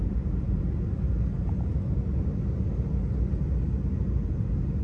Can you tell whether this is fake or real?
real